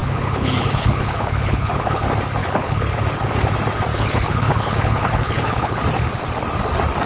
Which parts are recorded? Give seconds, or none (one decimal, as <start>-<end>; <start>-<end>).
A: 2.0-2.4; 3.0-3.9; 5.8-7.1

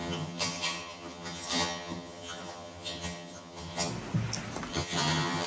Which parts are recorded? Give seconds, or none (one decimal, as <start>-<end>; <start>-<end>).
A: 3.9-4.7

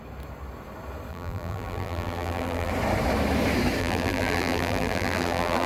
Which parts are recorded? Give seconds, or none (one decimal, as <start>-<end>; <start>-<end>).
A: 0.0-1.1; 2.7-3.8

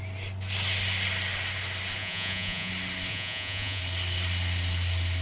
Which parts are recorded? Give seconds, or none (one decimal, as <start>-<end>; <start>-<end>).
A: 0.0-2.0; 2.7-3.1; 3.8-5.2